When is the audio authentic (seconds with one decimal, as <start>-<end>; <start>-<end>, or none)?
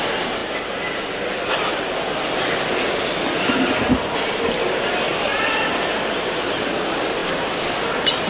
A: 0.0-8.3